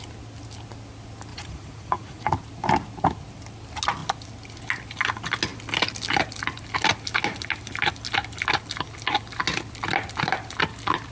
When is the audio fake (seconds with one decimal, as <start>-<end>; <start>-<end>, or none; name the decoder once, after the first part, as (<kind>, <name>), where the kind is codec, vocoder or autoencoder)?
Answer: 1.3-2.3 (vocoder, Vocos)